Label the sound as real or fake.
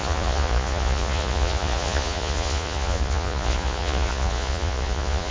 fake